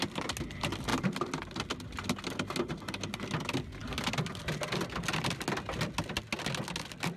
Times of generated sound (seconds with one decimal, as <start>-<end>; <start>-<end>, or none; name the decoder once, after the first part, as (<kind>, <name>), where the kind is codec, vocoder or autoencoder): none